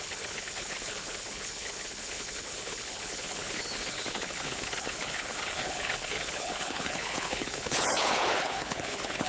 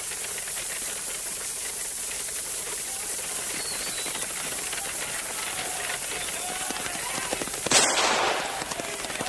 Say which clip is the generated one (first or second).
first